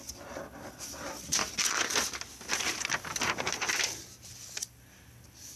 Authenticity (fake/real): real